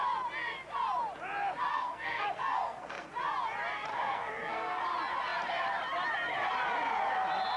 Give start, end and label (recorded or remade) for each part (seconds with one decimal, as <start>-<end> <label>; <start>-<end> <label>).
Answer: 0.0-1.7 recorded; 1.7-3.1 remade; 3.1-3.9 recorded; 3.9-4.8 remade; 4.8-7.6 recorded

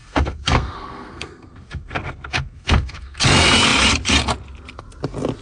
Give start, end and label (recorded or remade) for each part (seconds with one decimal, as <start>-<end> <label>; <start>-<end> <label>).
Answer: 0.0-3.2 remade; 3.2-5.4 recorded